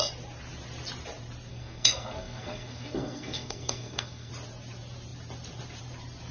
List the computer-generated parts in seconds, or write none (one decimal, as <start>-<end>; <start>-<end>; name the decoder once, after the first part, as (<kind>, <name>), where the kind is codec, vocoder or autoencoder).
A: 1.5-4.3 (codec, SNAC)

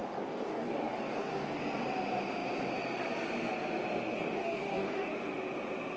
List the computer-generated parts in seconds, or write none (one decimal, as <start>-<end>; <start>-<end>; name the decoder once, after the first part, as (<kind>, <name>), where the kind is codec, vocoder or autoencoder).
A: 0.0-1.6 (codec, DAC); 4.1-5.1